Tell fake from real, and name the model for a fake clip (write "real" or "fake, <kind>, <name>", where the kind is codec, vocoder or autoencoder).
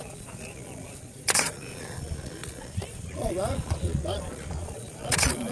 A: fake, vocoder, Vocos